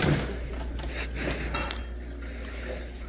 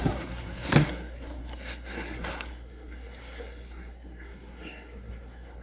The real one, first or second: first